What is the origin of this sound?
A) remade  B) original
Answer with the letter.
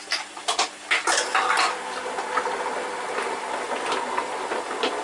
B